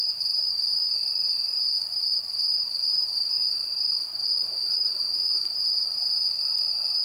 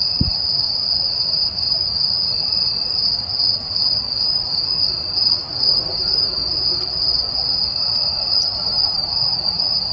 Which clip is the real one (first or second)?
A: second